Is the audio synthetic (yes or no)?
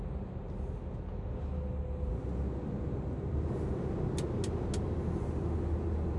no